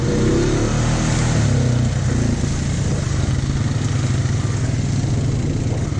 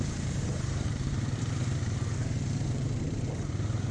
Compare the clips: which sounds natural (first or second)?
first